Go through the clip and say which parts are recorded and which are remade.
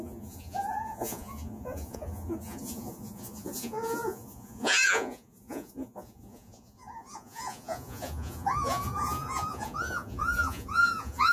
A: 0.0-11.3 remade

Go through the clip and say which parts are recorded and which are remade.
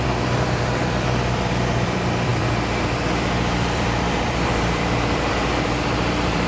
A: 0.0-6.5 remade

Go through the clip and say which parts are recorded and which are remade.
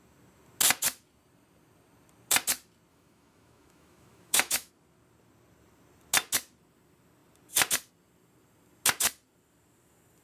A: 0.0-2.9 recorded; 2.9-4.7 remade; 4.7-10.2 recorded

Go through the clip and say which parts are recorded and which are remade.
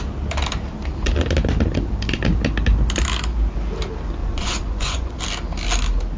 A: 0.0-4.2 recorded; 4.2-5.2 remade; 5.2-6.2 recorded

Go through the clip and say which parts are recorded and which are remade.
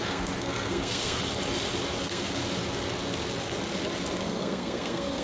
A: 0.0-1.2 remade; 1.2-2.0 recorded; 2.0-2.4 remade; 2.4-4.2 recorded; 4.2-5.2 remade